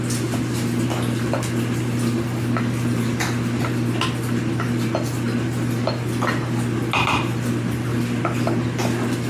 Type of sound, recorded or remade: recorded